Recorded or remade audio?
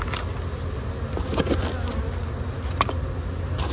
recorded